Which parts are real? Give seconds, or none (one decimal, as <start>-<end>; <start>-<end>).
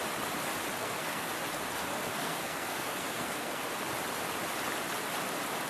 0.0-0.8; 1.3-1.8; 3.6-5.7